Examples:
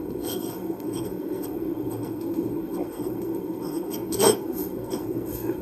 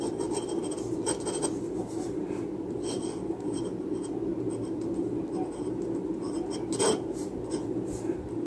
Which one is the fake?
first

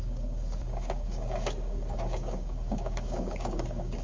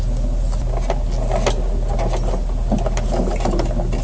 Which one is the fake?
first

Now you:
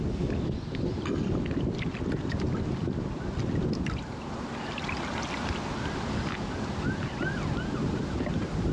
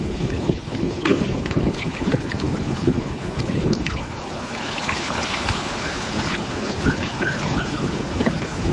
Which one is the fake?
second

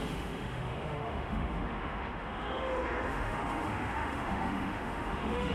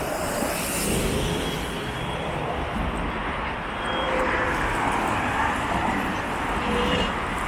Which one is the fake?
first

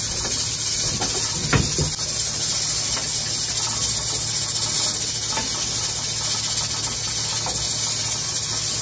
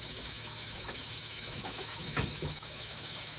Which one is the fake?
second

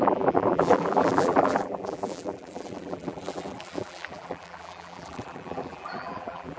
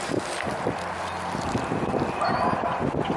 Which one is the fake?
first